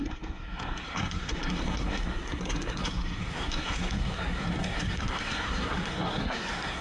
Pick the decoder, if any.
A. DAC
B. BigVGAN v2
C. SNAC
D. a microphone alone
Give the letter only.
C